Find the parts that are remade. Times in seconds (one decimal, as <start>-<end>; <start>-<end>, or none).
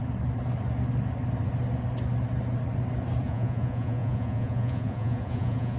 3.2-5.8